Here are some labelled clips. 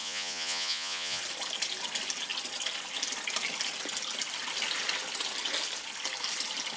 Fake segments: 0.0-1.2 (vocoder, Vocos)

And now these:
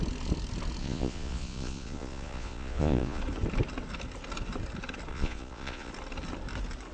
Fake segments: 0.8-3.2 (vocoder, Vocos); 5.1-5.9

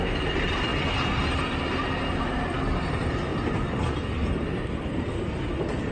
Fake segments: none

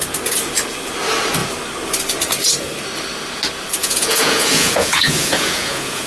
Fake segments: 3.8-6.1 (vocoder, Vocos)

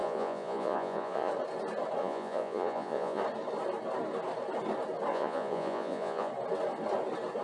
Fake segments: 0.0-1.3 (vocoder, Vocos); 2.0-3.2; 5.1-6.3

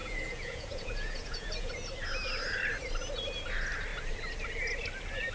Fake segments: 0.0-1.7 (vocoder, Vocos)

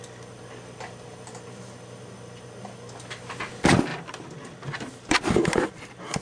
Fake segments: none

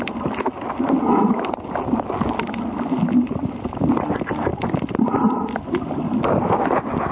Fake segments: none